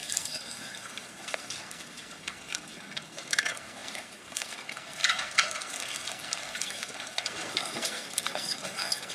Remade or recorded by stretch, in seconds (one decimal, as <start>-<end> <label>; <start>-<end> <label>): 0.0-9.1 remade